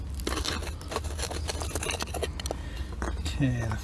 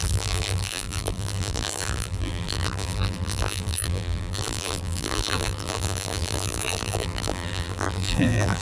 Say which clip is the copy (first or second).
second